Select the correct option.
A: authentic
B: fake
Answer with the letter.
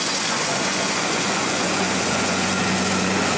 B